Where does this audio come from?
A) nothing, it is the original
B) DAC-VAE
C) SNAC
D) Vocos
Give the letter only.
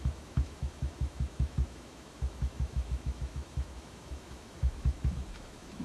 B